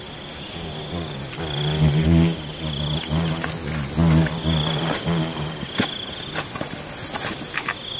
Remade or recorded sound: recorded